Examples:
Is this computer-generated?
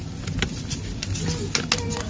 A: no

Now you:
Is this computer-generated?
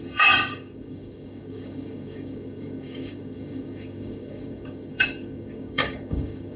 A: yes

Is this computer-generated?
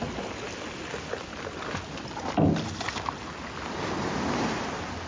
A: no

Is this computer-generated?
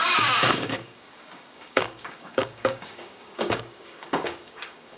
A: yes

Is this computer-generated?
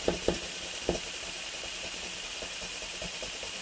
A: no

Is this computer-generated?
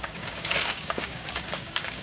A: yes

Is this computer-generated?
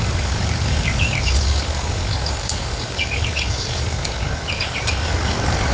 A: yes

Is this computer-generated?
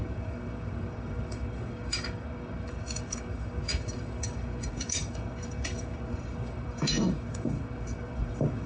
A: yes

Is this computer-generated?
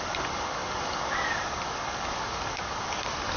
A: yes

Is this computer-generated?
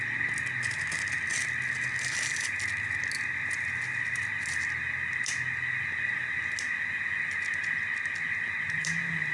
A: no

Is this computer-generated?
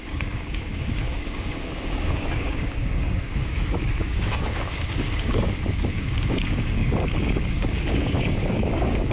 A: yes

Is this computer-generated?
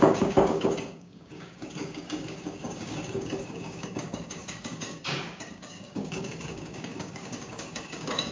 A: yes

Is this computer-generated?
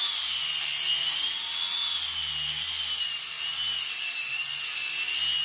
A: no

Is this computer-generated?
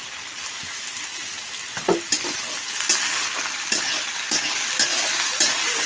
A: no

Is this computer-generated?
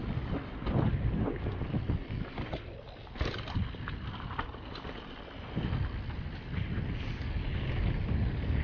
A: no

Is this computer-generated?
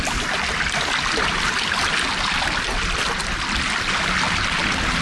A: no